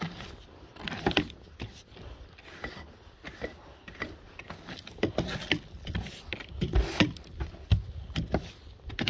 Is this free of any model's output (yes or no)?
yes